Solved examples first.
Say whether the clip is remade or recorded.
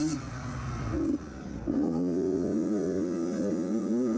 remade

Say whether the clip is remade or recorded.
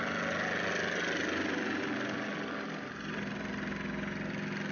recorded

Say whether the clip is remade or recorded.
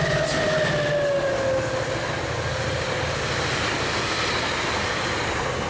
recorded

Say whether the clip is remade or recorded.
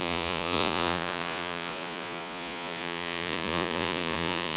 remade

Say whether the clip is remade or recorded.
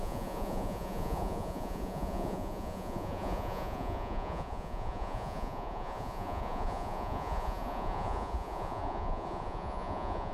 remade